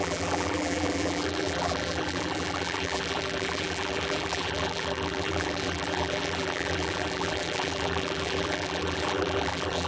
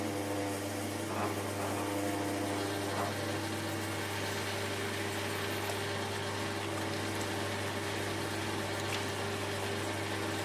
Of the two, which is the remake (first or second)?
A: first